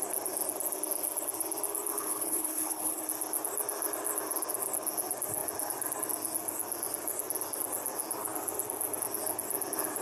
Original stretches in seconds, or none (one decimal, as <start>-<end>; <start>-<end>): 0.0-2.0; 3.0-10.0